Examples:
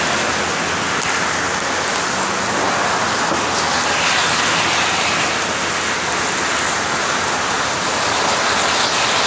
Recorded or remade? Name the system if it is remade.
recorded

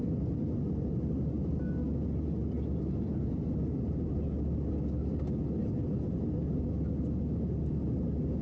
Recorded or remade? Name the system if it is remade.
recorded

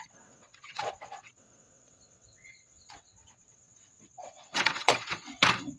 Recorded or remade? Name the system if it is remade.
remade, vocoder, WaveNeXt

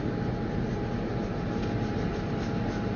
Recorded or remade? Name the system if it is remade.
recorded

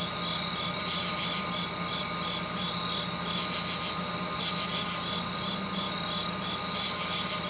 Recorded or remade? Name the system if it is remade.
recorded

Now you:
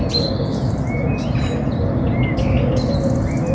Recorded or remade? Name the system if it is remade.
recorded